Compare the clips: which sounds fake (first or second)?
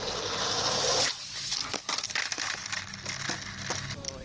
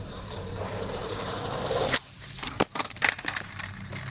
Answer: second